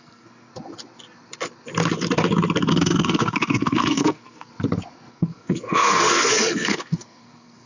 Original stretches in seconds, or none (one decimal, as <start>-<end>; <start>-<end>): 0.5-2.7; 4.5-5.1

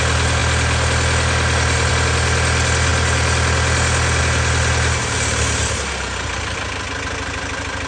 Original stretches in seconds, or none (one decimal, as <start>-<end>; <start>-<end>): 0.0-7.9

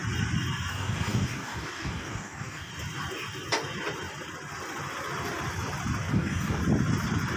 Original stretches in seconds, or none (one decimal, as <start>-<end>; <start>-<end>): 0.0-0.7; 2.7-6.1; 6.6-7.4

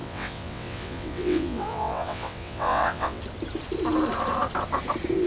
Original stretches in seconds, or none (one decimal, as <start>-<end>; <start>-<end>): 3.2-5.3